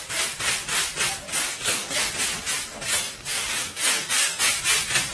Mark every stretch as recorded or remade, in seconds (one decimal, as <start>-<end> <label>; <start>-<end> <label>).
0.0-1.5 recorded; 1.5-2.1 remade; 2.1-2.9 recorded; 2.9-4.4 remade; 4.4-5.1 recorded